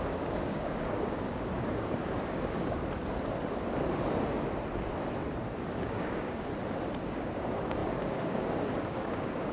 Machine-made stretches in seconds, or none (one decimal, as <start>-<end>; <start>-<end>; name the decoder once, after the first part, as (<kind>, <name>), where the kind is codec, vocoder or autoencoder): 0.0-2.8 (codec, DAC); 5.6-6.5; 7.0-9.5